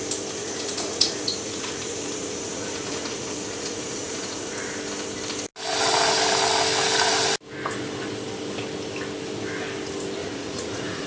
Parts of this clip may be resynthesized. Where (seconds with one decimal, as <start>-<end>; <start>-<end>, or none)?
0.4-4.5; 10.2-11.1